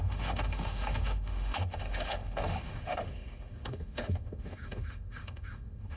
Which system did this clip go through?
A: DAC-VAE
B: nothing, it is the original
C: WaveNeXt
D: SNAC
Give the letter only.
A